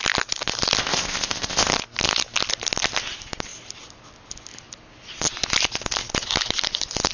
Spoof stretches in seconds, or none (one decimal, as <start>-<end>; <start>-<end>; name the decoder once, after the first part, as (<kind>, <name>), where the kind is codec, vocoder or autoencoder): 0.8-1.7 (codec, ZipCodec)